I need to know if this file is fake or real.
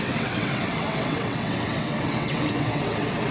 fake